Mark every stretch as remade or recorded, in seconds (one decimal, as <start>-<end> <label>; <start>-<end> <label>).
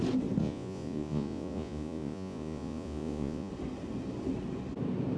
0.0-0.4 recorded; 0.4-3.5 remade; 3.5-5.2 recorded